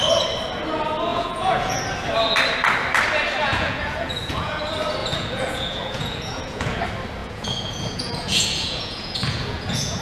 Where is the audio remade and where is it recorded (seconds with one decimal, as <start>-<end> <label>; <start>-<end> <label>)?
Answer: 0.0-1.1 recorded; 1.1-1.8 remade; 1.8-3.4 recorded; 3.4-4.6 remade; 4.6-5.0 recorded; 5.0-6.8 remade; 6.8-7.2 recorded; 7.2-10.0 remade